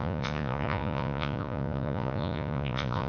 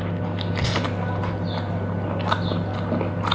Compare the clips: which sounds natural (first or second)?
second